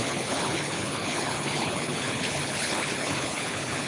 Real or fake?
fake